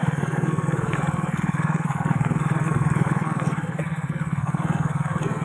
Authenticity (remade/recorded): remade